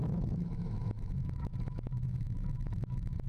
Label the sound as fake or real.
fake